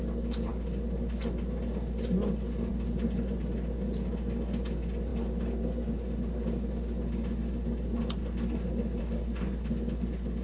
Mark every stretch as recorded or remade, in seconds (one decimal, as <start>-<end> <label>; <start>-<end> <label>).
0.0-10.4 recorded